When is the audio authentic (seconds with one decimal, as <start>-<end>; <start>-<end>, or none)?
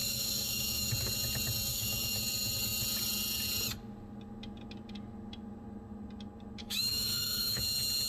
0.9-1.7; 2.2-6.6; 7.6-8.1